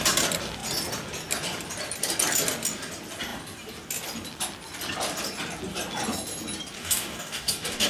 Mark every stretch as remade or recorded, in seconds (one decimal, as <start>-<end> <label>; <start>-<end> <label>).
0.0-6.8 recorded; 6.8-7.9 remade